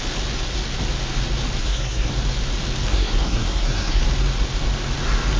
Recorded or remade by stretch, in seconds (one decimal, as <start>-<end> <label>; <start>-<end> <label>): 0.0-1.6 recorded; 1.6-2.1 remade; 2.1-2.9 recorded; 2.9-4.0 remade; 4.0-5.4 recorded